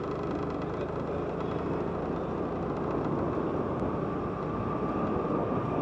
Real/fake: real